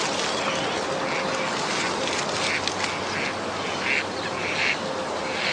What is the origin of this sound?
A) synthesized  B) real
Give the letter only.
B